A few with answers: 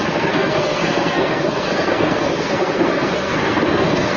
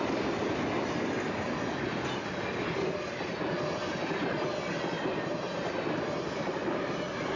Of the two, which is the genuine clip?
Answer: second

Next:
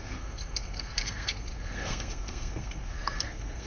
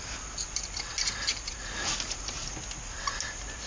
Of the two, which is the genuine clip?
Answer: second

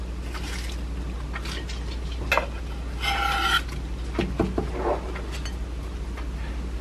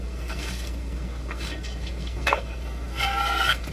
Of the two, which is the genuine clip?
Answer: first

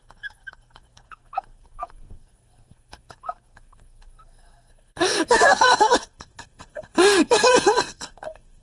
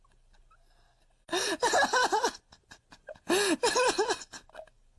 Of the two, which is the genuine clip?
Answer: second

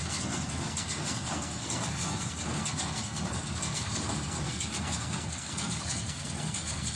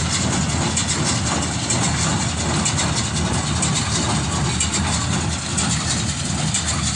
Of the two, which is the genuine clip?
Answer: second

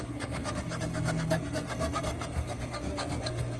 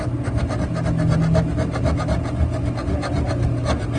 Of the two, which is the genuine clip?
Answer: second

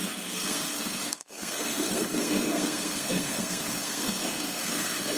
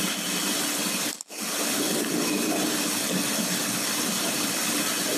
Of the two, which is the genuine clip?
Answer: second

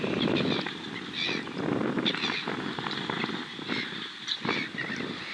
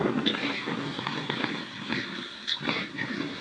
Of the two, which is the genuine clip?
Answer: first